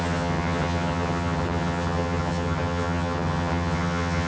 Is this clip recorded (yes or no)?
no